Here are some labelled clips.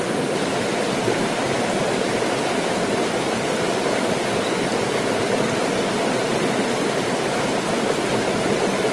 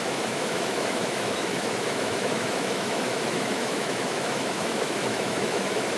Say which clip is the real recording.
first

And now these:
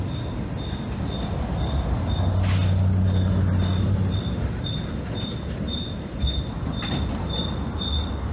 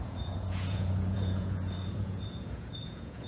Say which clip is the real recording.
first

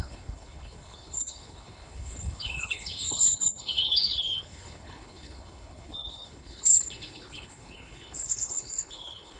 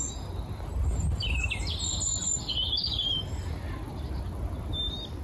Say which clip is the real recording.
second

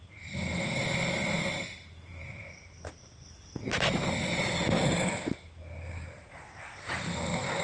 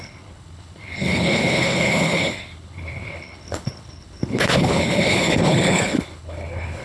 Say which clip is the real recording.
first